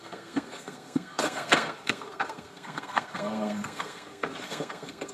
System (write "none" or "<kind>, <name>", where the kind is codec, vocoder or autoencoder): codec, SNAC